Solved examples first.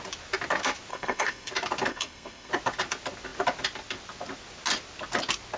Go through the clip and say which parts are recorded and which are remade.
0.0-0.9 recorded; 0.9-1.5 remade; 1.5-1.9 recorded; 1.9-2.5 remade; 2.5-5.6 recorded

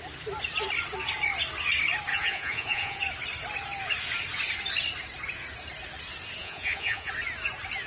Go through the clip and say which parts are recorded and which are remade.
0.0-2.1 recorded; 2.1-3.0 remade; 3.0-6.4 recorded; 6.4-7.1 remade; 7.1-7.9 recorded

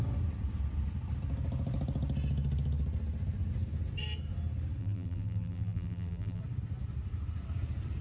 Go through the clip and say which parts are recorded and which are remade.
0.0-4.8 recorded; 4.8-6.4 remade; 6.4-8.0 recorded

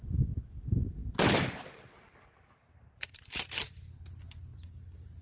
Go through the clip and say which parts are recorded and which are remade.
0.0-5.2 recorded

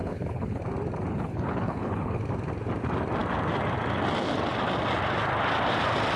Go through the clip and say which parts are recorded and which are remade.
0.0-0.6 remade; 0.6-1.1 recorded; 1.1-2.2 remade; 2.2-6.2 recorded

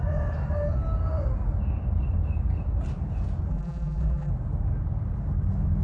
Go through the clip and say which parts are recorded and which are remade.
0.0-3.5 recorded; 3.5-4.3 remade; 4.3-5.8 recorded

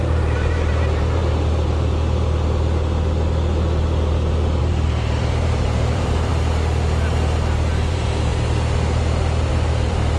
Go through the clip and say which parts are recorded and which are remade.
0.0-1.2 remade; 1.2-4.6 recorded; 4.6-6.3 remade; 6.3-7.9 recorded; 7.9-8.3 remade; 8.3-9.5 recorded; 9.5-10.2 remade